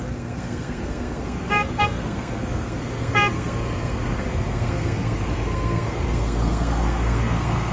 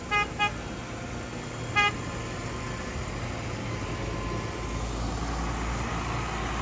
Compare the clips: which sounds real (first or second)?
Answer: second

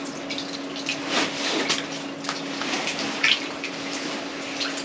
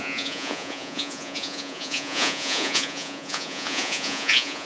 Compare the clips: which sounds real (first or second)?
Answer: first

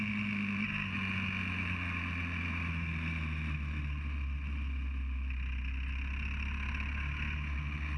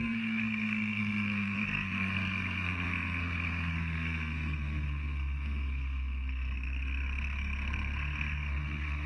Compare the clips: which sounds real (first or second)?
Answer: first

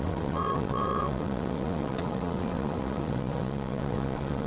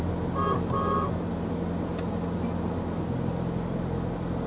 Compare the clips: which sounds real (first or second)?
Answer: second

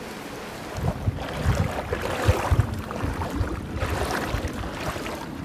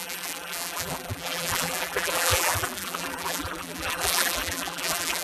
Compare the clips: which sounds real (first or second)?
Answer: first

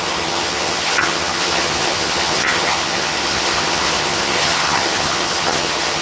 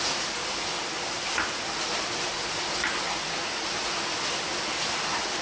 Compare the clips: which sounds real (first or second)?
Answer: second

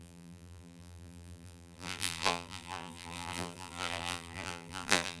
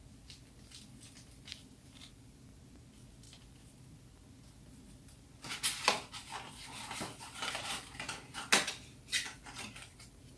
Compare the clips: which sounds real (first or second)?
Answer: second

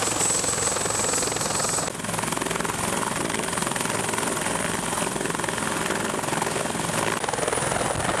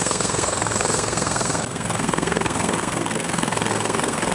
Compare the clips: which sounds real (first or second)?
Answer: first